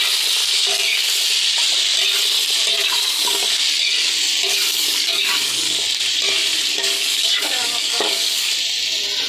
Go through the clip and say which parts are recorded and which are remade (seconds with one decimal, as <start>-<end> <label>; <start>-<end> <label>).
0.0-0.4 recorded; 0.4-1.0 remade; 1.0-2.7 recorded; 2.7-3.6 remade; 3.6-4.5 recorded; 4.5-5.7 remade; 5.7-6.7 recorded; 6.7-8.5 remade; 8.5-9.3 recorded